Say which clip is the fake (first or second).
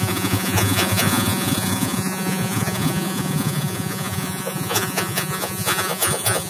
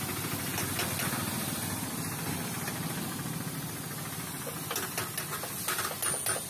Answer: first